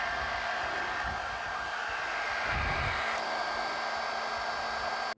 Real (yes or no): yes